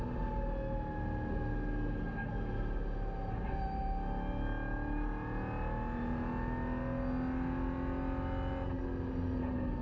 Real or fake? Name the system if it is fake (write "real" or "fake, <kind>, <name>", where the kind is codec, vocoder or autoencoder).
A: real